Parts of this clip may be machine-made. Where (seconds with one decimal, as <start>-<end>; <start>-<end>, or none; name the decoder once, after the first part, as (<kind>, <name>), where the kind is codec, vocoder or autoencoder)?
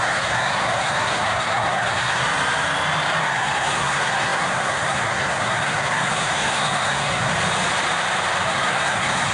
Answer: 0.0-2.2 (codec, SNAC); 3.2-7.3; 8.4-9.3